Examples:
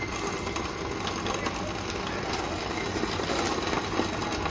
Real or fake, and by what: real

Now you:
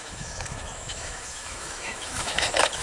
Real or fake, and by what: fake, autoencoder, DAC-VAE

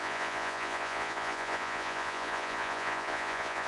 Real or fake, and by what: fake, vocoder, Vocos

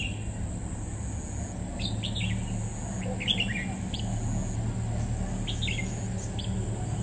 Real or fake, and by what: real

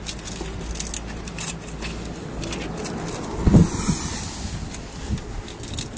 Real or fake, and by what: real